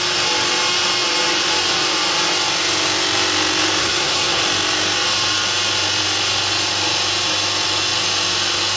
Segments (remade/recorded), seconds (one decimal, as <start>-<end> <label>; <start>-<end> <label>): 0.0-3.8 recorded; 3.8-4.4 remade; 4.4-8.8 recorded

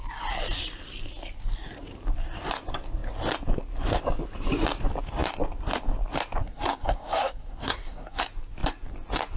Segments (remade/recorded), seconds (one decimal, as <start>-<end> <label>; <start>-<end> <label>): 0.0-6.4 recorded; 6.4-8.2 remade; 8.2-9.4 recorded

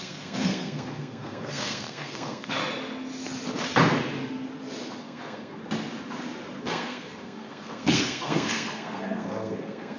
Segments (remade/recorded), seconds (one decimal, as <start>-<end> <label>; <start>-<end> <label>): 0.0-2.6 remade; 2.6-5.0 recorded; 5.0-5.6 remade; 5.6-6.6 recorded; 6.6-10.0 remade

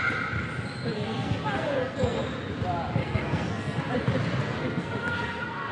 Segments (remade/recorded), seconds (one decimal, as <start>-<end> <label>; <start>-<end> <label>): 0.0-0.9 recorded; 0.9-2.2 remade; 2.2-3.0 recorded; 3.0-3.8 remade; 3.8-4.4 recorded; 4.4-5.7 remade

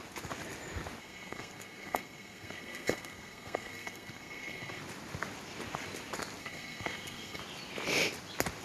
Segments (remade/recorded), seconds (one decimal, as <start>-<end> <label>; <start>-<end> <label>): 0.0-1.0 recorded; 1.0-4.8 remade; 4.8-6.4 recorded; 6.4-7.4 remade; 7.4-8.6 recorded